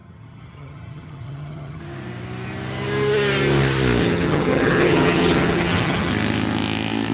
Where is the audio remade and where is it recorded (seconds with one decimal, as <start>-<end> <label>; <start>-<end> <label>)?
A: 0.0-1.8 remade; 1.8-4.0 recorded; 4.0-6.1 remade; 6.1-7.1 recorded